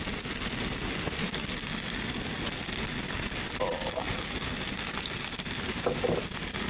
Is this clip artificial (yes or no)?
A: no